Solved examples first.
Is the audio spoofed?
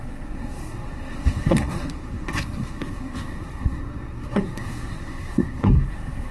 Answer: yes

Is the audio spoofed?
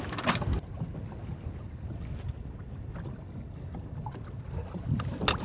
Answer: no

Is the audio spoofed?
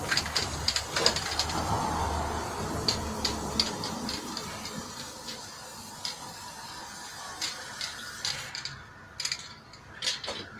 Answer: no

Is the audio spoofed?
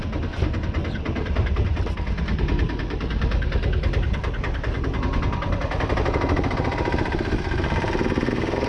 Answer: no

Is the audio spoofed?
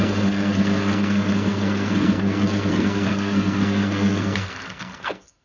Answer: yes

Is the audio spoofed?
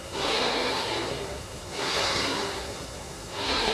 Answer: yes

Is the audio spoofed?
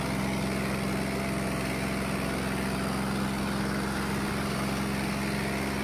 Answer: no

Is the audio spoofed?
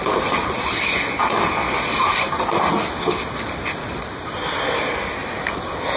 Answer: no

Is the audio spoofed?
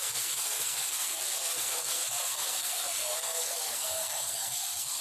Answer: yes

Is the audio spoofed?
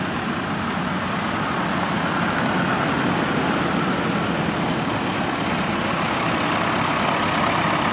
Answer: no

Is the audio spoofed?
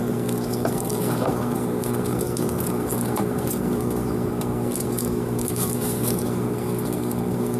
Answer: yes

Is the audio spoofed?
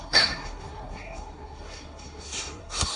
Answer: yes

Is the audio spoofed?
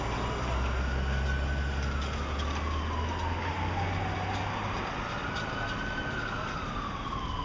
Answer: no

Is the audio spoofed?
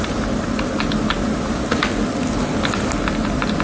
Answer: no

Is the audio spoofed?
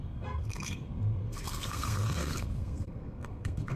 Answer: yes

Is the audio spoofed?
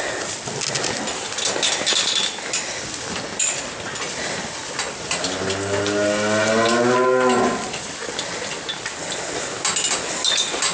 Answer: no